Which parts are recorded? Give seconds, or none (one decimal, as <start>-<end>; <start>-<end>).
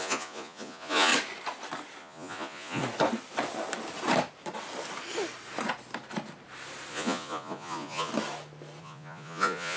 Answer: 1.1-2.0; 2.8-6.9; 8.1-8.8